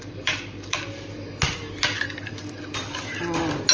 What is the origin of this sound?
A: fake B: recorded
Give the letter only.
B